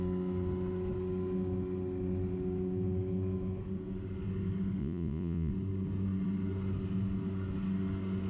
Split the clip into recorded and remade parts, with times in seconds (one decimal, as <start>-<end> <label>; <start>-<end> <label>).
0.0-4.8 recorded; 4.8-5.5 remade; 5.5-8.3 recorded